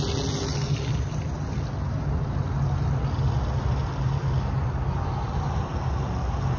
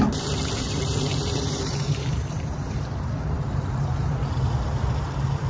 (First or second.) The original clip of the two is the first